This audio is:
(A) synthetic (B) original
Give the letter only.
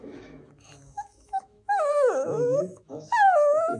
A